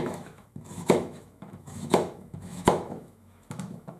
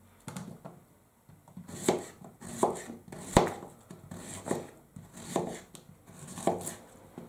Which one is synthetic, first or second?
first